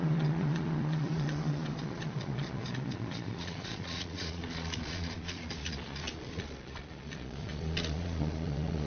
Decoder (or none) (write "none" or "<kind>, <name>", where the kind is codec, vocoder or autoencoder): vocoder, Vocos